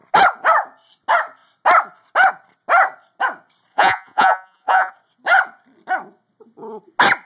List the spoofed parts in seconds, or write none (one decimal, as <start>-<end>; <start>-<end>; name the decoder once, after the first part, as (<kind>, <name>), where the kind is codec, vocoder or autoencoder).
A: 3.7-4.9 (vocoder, Vocos)